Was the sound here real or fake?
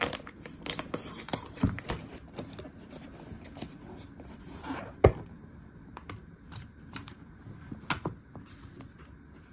fake